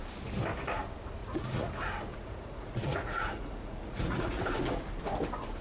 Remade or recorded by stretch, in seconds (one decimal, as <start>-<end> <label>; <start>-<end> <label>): 0.0-1.2 recorded; 1.2-1.7 remade; 1.7-2.1 recorded; 2.1-4.4 remade; 4.4-5.6 recorded